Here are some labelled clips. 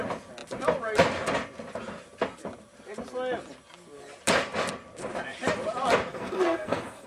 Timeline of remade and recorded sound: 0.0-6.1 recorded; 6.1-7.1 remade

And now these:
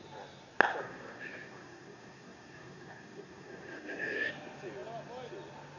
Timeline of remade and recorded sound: 0.0-0.8 recorded; 0.8-4.3 remade; 4.3-5.8 recorded

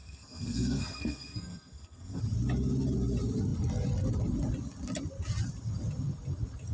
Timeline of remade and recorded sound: 0.0-2.2 remade; 2.2-6.7 recorded

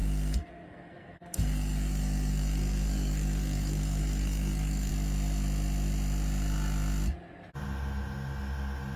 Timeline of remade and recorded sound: 0.0-4.9 remade; 4.9-9.0 recorded

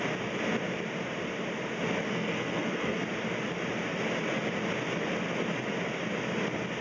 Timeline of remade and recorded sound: 0.0-2.1 recorded; 2.1-3.0 remade; 3.0-6.8 recorded